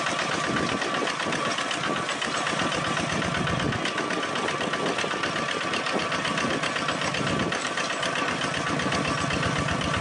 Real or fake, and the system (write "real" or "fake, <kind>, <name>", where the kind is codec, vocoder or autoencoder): real